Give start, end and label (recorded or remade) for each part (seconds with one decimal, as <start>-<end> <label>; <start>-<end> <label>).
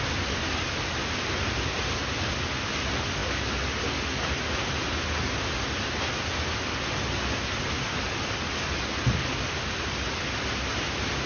0.0-11.3 recorded